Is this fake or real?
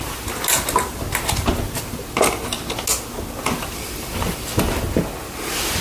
real